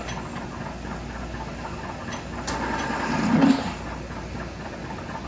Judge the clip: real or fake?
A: real